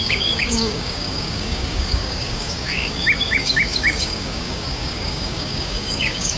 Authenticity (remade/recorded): remade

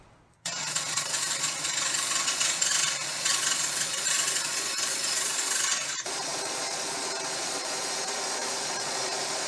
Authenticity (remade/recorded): remade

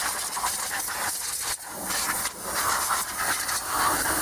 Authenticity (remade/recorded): recorded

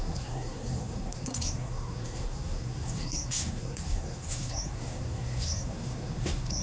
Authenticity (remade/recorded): remade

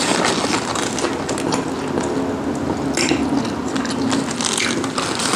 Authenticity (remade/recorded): recorded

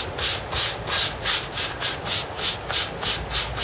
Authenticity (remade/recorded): recorded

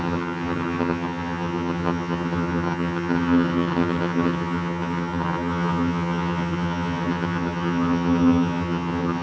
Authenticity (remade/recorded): remade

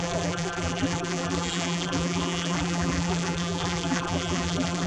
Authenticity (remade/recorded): remade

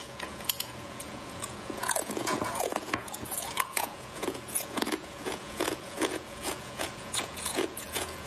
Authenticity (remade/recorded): remade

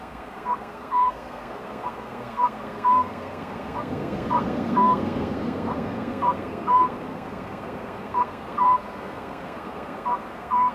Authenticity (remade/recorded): remade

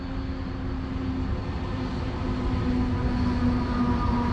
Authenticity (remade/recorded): recorded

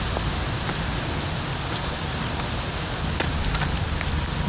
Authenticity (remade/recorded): recorded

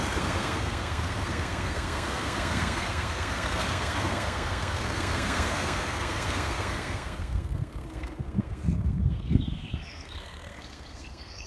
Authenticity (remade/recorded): remade